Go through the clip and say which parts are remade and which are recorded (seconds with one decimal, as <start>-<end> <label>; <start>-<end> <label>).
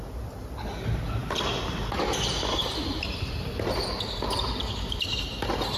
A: 0.0-5.8 recorded